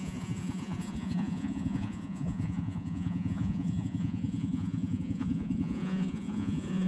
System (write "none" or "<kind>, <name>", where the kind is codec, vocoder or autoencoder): vocoder, Vocos